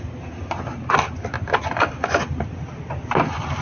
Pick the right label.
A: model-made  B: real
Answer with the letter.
B